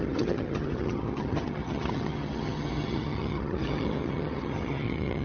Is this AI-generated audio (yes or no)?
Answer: yes